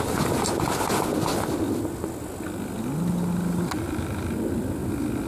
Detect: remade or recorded recorded